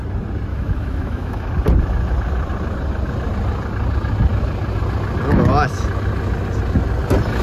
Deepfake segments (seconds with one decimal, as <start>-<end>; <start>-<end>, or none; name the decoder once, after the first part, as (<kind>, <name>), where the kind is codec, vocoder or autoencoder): 0.5-1.5 (autoencoder, DAC-VAE)